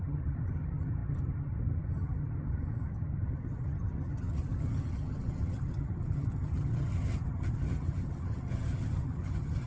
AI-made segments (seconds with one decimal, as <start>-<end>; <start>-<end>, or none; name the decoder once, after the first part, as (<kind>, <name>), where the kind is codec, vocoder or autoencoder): 0.0-9.7 (vocoder, HiFi-GAN)